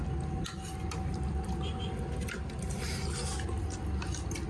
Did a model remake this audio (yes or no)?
no